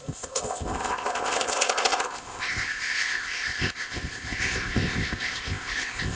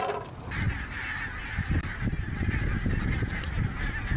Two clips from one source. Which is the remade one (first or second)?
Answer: first